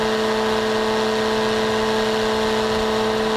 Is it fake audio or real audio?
real